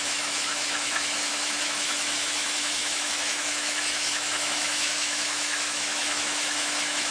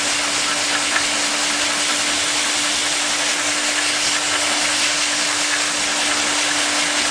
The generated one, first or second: first